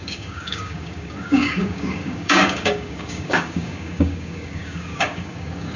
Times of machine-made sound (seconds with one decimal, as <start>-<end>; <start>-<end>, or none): 0.0-5.8